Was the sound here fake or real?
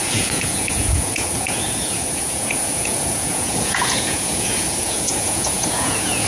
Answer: fake